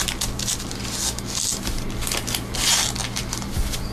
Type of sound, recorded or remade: recorded